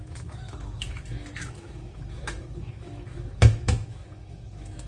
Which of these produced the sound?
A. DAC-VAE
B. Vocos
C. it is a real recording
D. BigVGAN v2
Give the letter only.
A